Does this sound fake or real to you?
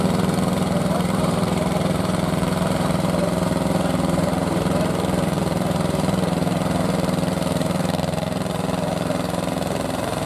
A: fake